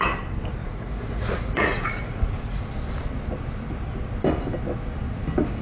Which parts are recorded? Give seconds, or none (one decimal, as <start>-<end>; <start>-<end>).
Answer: 0.0-0.6; 2.6-5.6